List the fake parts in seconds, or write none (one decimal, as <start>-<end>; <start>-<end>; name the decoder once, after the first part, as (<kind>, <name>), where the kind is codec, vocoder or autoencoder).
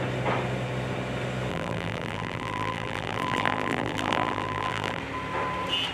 1.5-5.0 (vocoder, BigVGAN v2)